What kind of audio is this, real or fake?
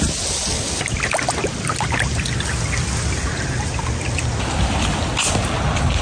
real